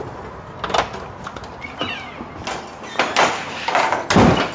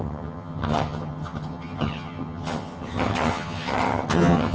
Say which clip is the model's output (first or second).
second